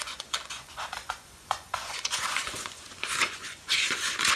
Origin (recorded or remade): remade